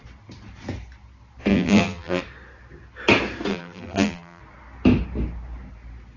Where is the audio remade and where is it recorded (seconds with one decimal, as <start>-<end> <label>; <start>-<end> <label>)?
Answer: 0.0-1.5 recorded; 1.5-2.2 remade; 2.2-3.5 recorded; 3.5-4.4 remade; 4.4-6.2 recorded